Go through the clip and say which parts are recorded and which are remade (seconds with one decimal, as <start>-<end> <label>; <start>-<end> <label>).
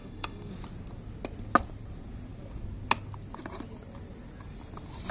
0.0-0.5 remade; 0.5-5.1 recorded